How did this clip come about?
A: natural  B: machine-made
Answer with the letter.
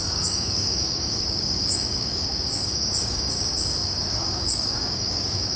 B